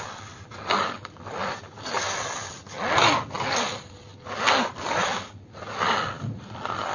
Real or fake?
fake